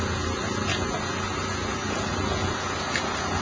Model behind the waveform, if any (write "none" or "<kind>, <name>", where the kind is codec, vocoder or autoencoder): none